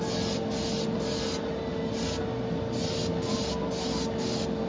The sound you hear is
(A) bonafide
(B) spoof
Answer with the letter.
A